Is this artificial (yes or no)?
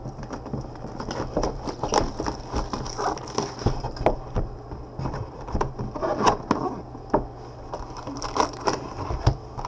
no